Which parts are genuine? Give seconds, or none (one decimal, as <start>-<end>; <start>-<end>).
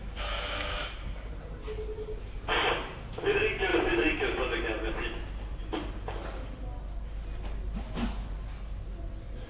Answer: 1.3-9.5